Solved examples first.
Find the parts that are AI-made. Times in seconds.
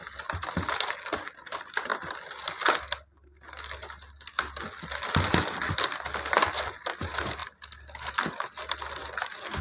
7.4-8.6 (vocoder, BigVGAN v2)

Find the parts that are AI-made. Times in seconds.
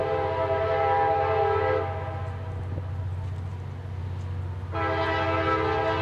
none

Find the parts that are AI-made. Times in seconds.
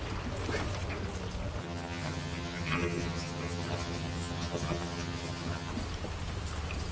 1.6-5.7 (vocoder, HiFi-GAN)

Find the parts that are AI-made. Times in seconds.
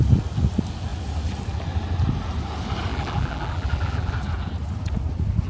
2.9-4.1 (vocoder, BigVGAN v2)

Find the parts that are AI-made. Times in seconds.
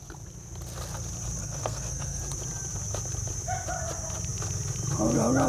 1.4-2.2 (codec, SNAC)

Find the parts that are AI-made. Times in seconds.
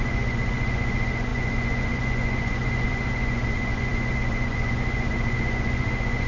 0.0-6.3 (vocoder, Vocos)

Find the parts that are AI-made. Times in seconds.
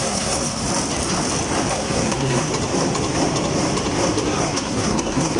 0.0-0.6 (codec, SNAC); 1.7-2.5; 4.4-5.4